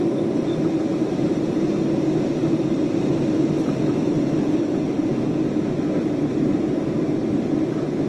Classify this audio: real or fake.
real